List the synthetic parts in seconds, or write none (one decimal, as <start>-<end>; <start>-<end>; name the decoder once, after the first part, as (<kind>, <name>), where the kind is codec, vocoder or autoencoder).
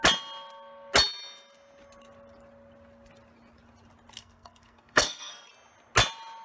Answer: 4.2-5.5 (codec, SNAC)